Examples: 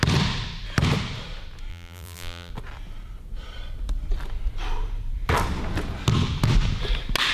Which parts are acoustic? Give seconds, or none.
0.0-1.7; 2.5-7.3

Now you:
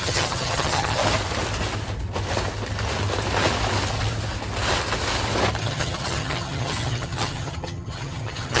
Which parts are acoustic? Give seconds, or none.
1.0-5.6

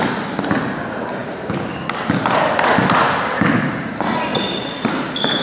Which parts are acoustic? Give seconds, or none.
0.0-5.4

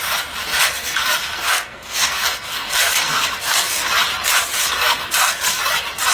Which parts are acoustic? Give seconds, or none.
0.0-0.5; 3.9-4.6; 5.6-6.1

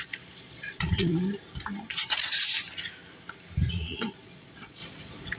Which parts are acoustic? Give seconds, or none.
1.1-3.7

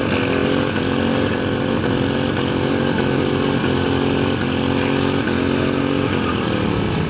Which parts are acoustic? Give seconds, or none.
0.0-7.1

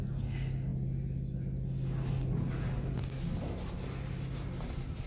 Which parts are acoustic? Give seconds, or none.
0.0-5.1